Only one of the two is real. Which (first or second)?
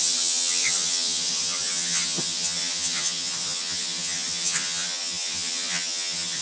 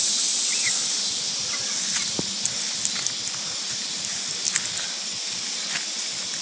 second